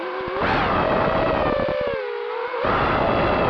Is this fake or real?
real